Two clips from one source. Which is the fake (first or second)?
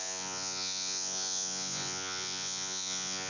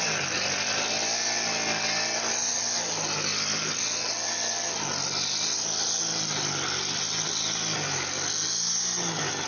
first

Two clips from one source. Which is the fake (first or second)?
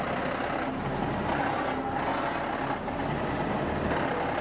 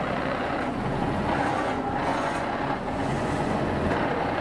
second